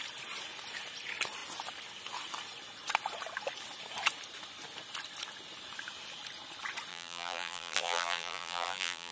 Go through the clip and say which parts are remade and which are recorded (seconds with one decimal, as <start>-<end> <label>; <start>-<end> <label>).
0.0-6.9 recorded; 6.9-9.1 remade